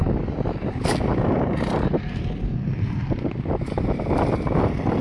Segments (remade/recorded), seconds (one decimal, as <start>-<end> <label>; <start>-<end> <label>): 0.0-5.0 recorded